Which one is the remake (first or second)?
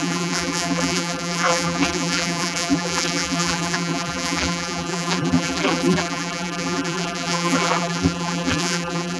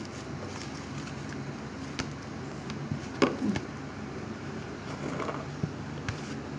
first